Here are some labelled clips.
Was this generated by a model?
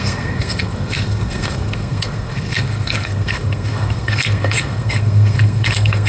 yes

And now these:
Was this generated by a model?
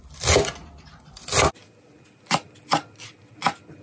no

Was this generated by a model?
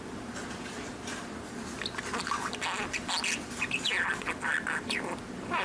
no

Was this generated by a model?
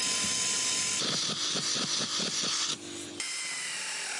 no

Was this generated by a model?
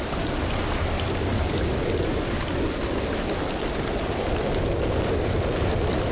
no